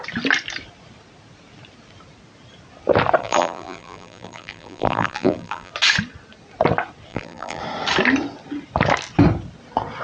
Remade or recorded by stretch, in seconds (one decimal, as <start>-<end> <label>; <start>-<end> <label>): 0.0-3.2 recorded; 3.2-5.7 remade; 5.7-7.1 recorded; 7.1-7.6 remade; 7.6-10.0 recorded